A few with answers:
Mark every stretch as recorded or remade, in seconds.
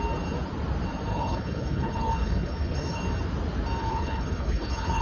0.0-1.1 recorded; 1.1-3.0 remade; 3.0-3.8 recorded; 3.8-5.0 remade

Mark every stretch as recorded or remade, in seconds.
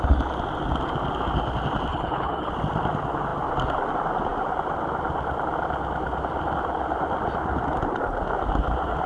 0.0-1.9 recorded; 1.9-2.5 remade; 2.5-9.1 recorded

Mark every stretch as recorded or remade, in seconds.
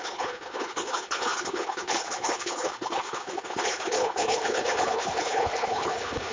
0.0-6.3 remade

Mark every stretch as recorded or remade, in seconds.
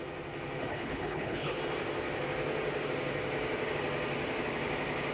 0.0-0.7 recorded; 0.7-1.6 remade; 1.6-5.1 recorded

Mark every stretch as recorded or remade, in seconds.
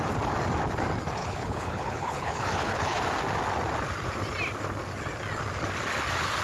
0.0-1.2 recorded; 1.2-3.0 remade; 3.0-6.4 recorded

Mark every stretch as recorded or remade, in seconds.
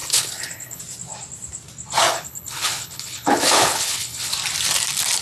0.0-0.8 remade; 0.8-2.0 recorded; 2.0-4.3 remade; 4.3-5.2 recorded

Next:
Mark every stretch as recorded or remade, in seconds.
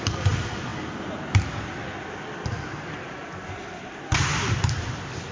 0.0-5.3 recorded